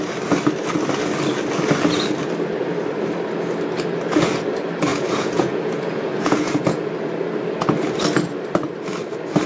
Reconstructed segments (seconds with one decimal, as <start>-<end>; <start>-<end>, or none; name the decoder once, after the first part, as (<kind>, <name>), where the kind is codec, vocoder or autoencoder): 4.9-6.9 (vocoder, Vocos)